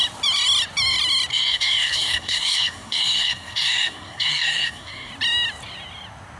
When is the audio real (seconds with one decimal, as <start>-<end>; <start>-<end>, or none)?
0.0-1.3; 5.1-6.4